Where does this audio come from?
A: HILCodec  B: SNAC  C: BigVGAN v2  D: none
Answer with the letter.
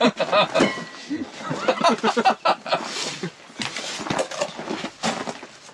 D